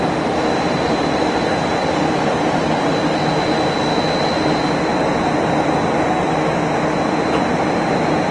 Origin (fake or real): real